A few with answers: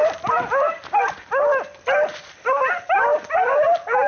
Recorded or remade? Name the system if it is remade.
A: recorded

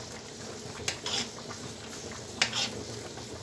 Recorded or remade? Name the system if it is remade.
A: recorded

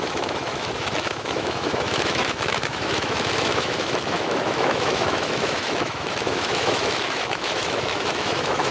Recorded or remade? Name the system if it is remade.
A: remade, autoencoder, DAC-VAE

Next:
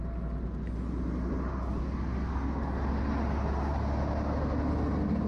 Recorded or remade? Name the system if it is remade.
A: recorded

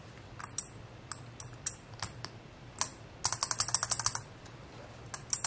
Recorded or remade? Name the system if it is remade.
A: recorded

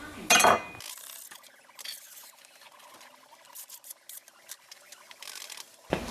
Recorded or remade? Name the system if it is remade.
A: recorded